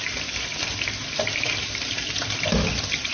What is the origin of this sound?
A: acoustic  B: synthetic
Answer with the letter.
A